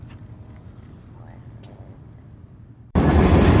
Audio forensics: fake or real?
fake